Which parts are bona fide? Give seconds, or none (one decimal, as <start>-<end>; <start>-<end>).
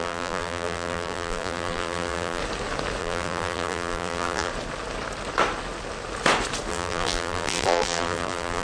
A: 2.4-3.0; 4.5-6.7